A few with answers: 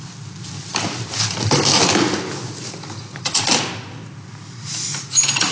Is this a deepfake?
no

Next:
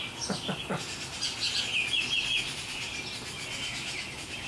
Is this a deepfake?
no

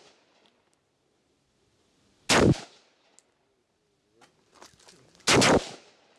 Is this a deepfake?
no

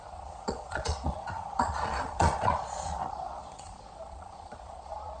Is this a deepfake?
yes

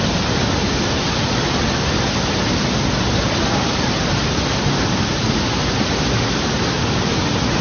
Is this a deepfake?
no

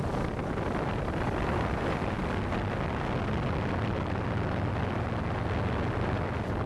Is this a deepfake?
no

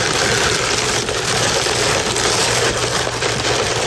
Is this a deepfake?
no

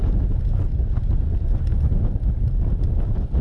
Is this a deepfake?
no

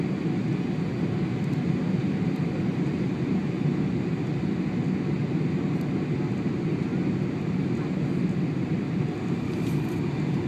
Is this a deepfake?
no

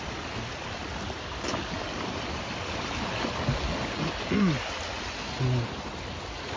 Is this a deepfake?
no